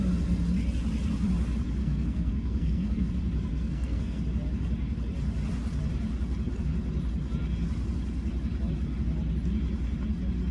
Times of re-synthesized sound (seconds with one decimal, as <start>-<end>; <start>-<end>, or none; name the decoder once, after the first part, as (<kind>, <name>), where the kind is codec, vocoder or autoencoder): 1.8-3.1 (codec, SNAC); 3.5-4.2